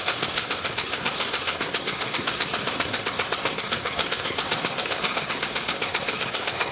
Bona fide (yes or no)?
no